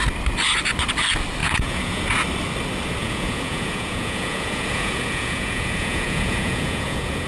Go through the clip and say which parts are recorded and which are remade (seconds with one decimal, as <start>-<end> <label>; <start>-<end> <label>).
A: 0.0-1.4 recorded; 1.4-2.0 remade; 2.0-3.0 recorded; 3.0-7.3 remade